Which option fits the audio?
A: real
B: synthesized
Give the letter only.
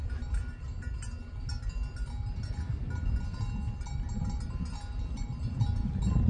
A